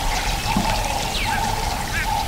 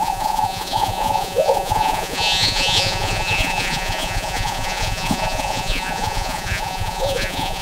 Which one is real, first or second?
first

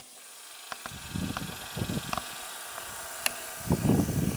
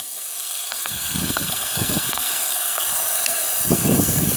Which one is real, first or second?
first